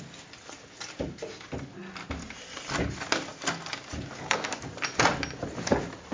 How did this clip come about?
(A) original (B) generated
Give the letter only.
A